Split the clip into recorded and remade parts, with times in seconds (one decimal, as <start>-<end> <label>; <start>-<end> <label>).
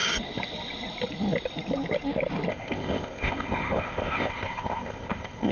0.0-2.5 recorded; 2.5-5.5 remade